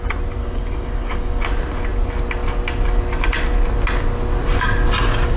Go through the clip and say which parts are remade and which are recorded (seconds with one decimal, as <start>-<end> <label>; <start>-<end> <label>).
0.0-0.4 recorded; 0.4-1.4 remade; 1.4-5.4 recorded